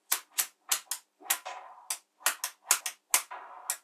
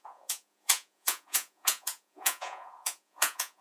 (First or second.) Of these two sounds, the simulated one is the second